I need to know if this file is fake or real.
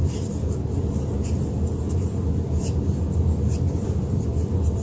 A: real